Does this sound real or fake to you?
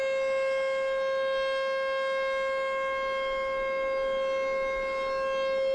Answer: real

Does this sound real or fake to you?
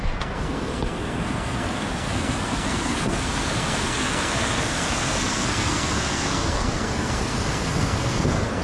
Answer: fake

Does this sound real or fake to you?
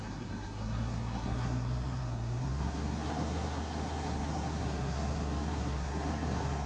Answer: fake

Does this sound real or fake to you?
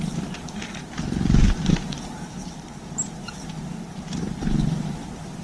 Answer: real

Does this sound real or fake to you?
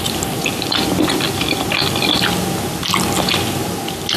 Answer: real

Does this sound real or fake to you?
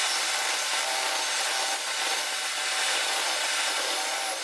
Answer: real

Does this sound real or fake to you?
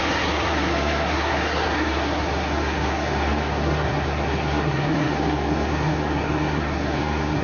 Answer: fake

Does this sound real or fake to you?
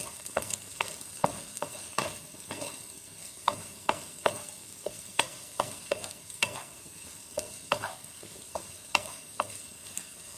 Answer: fake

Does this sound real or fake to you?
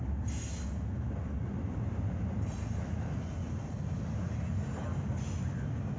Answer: real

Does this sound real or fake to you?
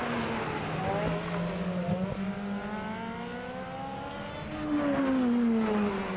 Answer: real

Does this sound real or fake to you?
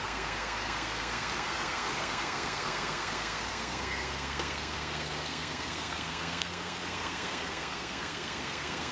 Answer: fake